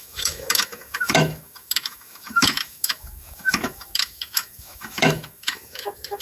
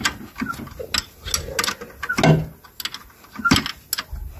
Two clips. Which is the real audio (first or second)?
second